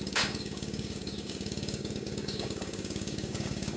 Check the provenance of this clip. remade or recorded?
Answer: remade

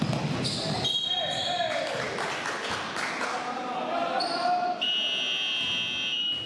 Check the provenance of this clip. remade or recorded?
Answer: recorded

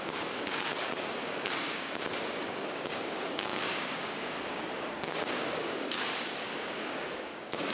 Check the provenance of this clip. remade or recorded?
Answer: remade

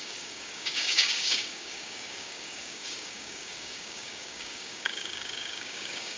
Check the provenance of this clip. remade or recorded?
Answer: remade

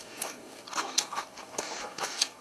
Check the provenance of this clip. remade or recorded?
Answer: remade